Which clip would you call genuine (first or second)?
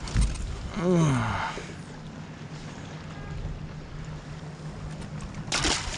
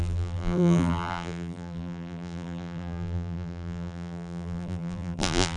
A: first